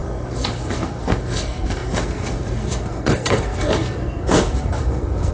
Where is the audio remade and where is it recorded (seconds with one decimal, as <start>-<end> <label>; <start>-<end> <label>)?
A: 0.0-5.3 remade